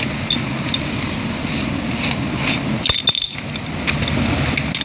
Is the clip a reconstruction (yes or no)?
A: no